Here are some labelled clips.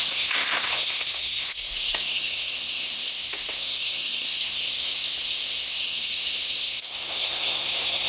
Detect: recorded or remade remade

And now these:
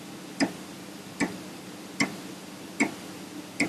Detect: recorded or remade recorded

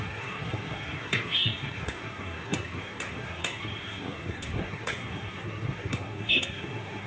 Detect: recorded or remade remade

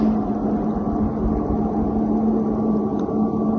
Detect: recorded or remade recorded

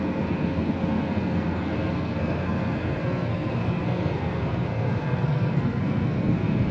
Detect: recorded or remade remade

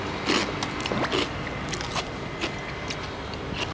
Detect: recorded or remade recorded